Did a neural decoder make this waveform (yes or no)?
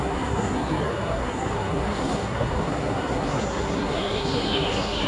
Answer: yes